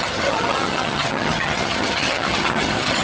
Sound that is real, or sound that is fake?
fake